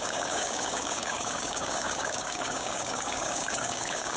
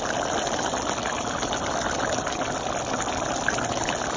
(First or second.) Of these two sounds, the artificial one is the first